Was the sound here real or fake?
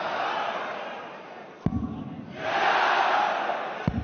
real